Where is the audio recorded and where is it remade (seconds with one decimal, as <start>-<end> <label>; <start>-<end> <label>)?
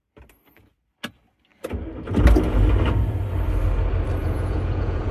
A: 0.0-4.2 recorded; 4.2-5.1 remade